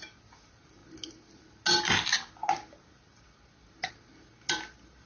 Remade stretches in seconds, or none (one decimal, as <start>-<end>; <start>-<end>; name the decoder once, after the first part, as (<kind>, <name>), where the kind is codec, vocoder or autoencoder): none